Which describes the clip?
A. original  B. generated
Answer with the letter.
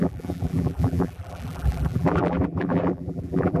B